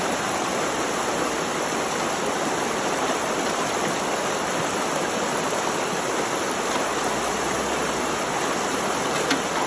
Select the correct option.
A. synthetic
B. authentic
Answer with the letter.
B